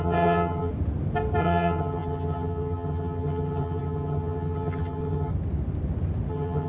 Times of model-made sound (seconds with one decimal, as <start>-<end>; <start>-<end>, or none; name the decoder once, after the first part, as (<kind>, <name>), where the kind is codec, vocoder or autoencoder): 0.0-0.7 (vocoder, HiFi-GAN); 1.4-5.3; 6.3-6.7